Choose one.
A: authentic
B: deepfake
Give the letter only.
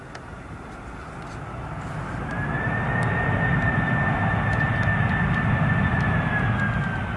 A